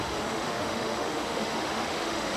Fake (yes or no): yes